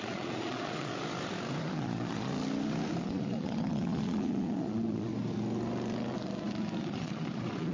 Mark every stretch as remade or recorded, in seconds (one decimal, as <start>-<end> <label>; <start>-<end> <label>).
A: 0.0-0.9 remade; 0.9-1.6 recorded; 1.6-2.3 remade; 2.3-3.0 recorded; 3.0-5.1 remade; 5.1-6.8 recorded; 6.8-7.7 remade